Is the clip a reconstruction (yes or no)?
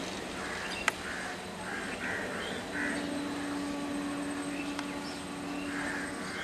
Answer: no